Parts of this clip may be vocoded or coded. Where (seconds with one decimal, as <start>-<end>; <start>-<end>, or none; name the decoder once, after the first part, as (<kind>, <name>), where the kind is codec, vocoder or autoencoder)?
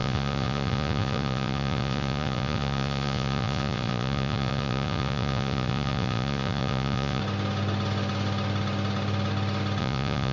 0.0-7.2 (vocoder, Vocos); 9.8-10.3